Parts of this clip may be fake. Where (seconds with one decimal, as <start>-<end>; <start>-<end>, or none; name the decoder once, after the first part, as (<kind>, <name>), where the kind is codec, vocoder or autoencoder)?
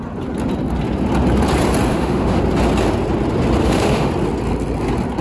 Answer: 1.9-2.4 (autoencoder, DAC-VAE); 3.6-4.1